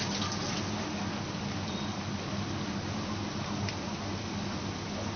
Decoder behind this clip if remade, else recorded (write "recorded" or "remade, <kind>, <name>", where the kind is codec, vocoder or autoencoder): recorded